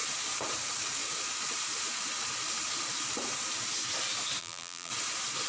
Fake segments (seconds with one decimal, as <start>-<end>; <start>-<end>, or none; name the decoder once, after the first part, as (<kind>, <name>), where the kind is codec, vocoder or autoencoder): 4.4-4.9 (vocoder, BigVGAN v2)

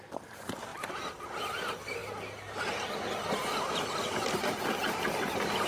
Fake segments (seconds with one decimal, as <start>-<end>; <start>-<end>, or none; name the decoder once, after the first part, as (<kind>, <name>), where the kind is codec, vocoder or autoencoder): 0.0-0.7 (vocoder, BigVGAN v2); 1.3-2.0; 5.1-5.7

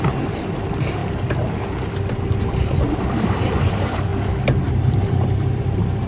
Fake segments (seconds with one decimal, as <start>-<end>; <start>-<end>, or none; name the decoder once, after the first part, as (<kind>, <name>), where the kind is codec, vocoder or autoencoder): 0.0-1.0 (vocoder, BigVGAN v2); 2.4-4.1; 4.7-6.1

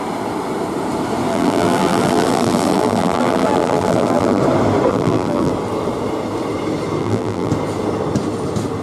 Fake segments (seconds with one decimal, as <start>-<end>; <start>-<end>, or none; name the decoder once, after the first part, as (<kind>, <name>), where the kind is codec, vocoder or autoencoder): 1.3-4.4 (vocoder, BigVGAN v2); 4.9-5.5; 7.0-7.5

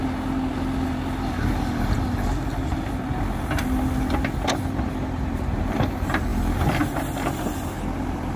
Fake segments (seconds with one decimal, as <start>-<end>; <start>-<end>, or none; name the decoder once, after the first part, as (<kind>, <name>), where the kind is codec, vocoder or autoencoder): 4.5-8.4 (vocoder, BigVGAN v2)